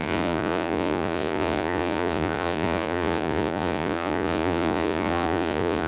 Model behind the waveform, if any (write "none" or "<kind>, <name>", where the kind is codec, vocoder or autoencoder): vocoder, Vocos